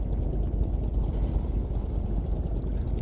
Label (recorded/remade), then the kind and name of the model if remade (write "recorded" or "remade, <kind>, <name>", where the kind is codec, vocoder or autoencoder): recorded